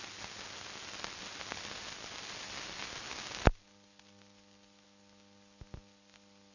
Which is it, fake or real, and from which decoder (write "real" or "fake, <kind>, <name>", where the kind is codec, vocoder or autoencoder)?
real